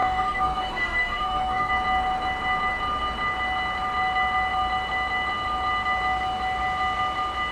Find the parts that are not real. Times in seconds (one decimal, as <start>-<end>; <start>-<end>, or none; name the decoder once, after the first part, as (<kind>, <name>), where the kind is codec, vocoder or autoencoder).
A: 0.0-1.7 (autoencoder, DAC-VAE)